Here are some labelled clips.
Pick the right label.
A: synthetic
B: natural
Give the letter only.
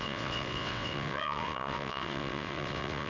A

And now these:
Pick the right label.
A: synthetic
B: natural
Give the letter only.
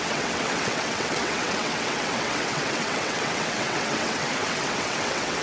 A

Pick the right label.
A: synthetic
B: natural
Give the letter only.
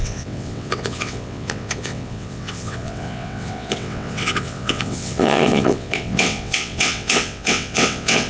A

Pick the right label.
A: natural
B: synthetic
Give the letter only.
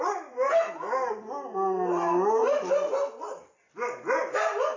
A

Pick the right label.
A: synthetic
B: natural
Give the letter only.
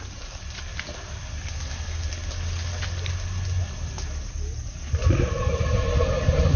B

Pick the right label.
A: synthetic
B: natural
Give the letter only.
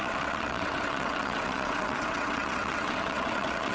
A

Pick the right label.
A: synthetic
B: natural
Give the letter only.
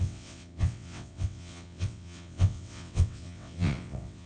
A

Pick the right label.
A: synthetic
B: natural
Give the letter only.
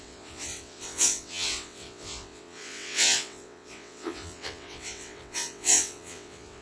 A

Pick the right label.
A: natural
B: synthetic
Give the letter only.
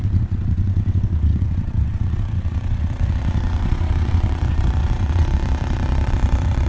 B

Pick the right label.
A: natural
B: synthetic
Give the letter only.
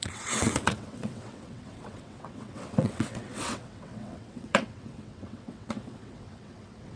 B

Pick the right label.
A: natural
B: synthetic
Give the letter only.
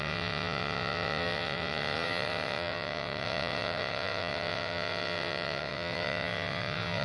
B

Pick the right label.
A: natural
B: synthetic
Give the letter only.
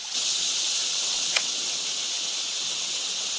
B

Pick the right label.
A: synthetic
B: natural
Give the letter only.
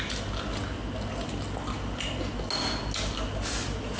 B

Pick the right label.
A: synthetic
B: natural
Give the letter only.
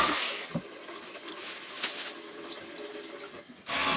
B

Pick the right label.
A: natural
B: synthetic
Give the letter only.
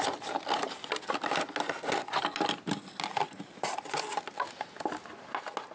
A